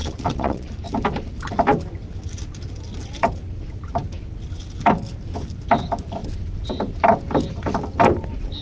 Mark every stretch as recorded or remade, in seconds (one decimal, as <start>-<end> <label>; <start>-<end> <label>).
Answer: 0.0-0.7 remade; 0.7-8.6 recorded